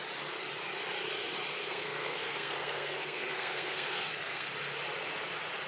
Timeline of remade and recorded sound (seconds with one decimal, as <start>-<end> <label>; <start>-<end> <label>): 0.0-1.5 recorded; 1.5-4.5 remade; 4.5-5.7 recorded